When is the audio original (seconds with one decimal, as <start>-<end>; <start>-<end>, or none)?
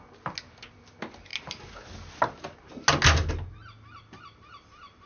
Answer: 0.0-5.1